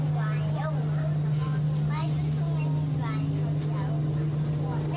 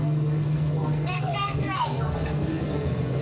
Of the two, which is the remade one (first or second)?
second